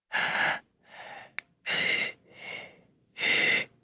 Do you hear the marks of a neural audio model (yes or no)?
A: no